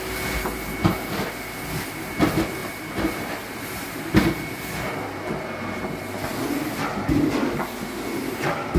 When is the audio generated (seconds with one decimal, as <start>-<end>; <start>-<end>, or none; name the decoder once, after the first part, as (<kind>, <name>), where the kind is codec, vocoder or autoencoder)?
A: 2.6-4.0 (vocoder, BigVGAN v2)